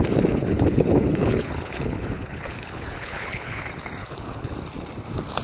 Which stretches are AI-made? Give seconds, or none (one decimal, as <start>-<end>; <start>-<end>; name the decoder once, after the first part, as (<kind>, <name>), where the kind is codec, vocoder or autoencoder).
0.4-3.6 (codec, HILCodec); 4.0-4.5